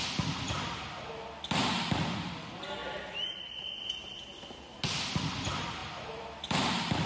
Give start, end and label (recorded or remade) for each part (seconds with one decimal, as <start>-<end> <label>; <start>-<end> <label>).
0.0-2.8 recorded; 2.8-3.8 remade; 3.8-5.8 recorded; 5.8-7.1 remade